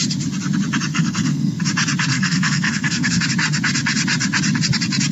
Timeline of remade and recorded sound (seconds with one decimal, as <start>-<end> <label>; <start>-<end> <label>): 0.0-0.9 recorded; 0.9-1.6 remade; 1.6-2.1 recorded; 2.1-3.2 remade; 3.2-5.1 recorded